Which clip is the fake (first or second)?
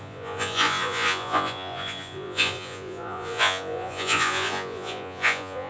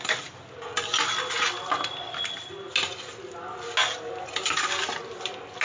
first